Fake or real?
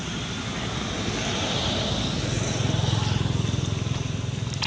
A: real